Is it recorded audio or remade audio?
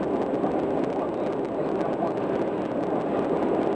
recorded